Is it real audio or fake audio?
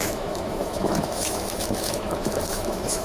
fake